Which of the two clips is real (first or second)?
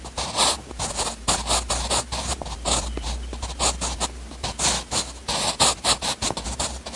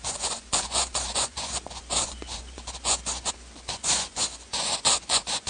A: first